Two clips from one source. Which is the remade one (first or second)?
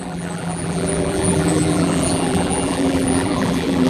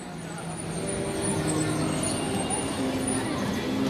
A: first